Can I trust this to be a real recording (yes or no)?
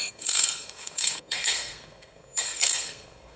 no